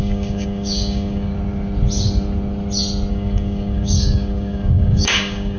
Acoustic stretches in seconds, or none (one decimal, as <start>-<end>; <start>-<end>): 1.3-3.1